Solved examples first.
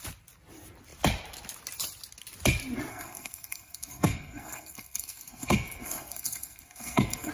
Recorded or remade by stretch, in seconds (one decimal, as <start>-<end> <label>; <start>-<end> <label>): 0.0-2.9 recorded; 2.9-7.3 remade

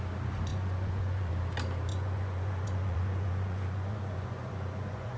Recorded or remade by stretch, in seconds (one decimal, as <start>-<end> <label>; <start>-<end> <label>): 0.0-0.5 recorded; 0.5-1.3 remade; 1.3-1.9 recorded; 1.9-5.2 remade

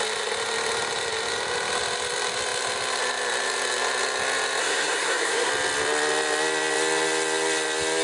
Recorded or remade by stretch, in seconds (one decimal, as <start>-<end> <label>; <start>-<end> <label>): 0.0-4.6 recorded; 4.6-5.5 remade; 5.5-8.0 recorded

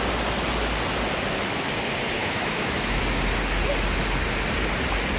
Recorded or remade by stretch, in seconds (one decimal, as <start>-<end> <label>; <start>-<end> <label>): 0.0-2.2 recorded; 2.2-3.0 remade; 3.0-5.2 recorded